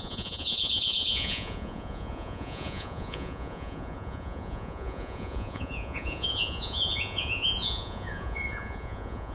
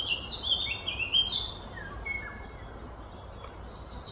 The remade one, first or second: first